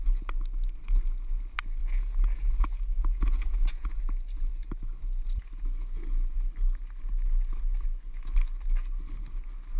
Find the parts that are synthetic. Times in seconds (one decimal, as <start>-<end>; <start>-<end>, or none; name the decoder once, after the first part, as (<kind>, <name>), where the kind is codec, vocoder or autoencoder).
1.8-4.0 (vocoder, Vocos)